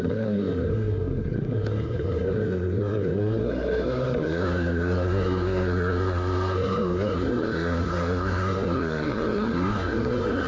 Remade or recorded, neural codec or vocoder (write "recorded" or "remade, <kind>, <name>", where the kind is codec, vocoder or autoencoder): remade, codec, SNAC